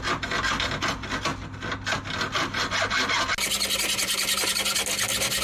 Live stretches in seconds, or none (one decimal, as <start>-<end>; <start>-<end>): 0.0-5.4